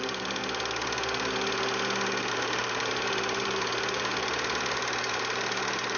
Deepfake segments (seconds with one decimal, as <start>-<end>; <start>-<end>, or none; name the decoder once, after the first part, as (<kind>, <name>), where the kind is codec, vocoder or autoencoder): 0.0-0.4 (vocoder, BigVGAN v2); 2.3-4.1; 5.1-6.0